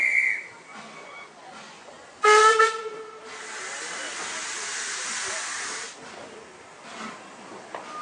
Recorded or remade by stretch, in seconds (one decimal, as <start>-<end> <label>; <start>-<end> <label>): 0.0-0.7 recorded; 0.7-2.8 remade; 2.8-8.0 recorded